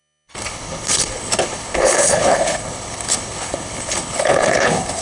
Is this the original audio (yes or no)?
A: no